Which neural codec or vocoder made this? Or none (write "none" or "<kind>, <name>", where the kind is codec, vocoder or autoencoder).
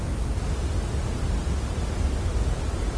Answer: none